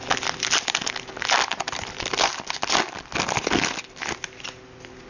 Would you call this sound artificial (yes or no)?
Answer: no